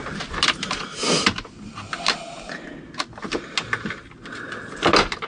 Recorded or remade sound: recorded